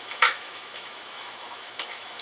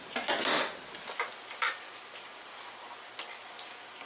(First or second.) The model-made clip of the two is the first